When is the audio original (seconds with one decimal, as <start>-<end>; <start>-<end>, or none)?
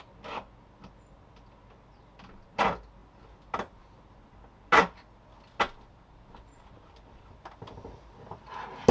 0.0-8.9